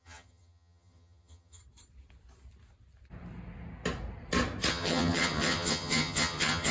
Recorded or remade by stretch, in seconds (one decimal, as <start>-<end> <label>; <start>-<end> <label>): 0.0-1.6 remade; 1.6-4.7 recorded; 4.7-6.7 remade